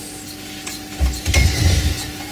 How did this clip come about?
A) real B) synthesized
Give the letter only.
A